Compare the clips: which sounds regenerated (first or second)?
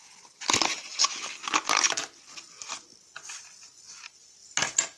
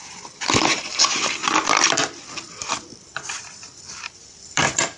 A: second